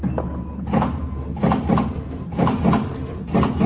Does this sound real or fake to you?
real